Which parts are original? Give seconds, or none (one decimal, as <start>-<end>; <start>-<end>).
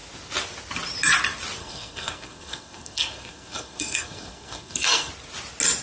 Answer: 0.0-1.6; 5.1-5.8